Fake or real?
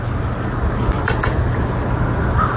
real